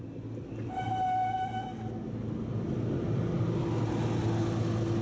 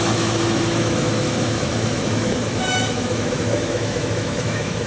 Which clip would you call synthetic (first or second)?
second